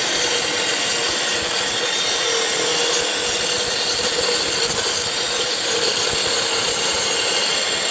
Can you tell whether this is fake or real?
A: real